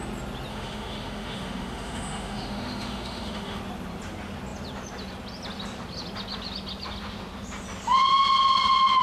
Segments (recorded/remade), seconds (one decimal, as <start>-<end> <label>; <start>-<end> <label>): 0.0-0.5 recorded; 0.5-3.6 remade; 3.6-9.0 recorded